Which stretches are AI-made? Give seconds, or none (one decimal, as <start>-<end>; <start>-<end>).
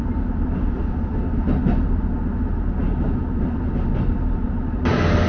none